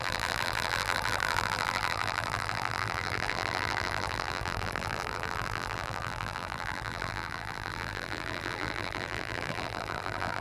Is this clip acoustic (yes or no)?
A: no